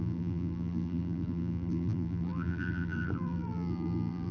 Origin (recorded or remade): remade